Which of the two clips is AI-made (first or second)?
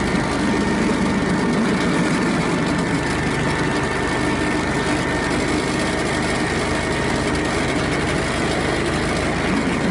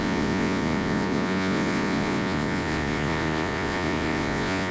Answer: second